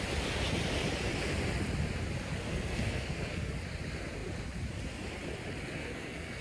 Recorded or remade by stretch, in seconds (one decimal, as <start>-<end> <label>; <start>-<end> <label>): 0.0-2.5 recorded; 2.5-3.5 remade; 3.5-5.8 recorded; 5.8-6.4 remade